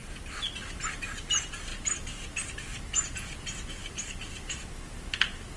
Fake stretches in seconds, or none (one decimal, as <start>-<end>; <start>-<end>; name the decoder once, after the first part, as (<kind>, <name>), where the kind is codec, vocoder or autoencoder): none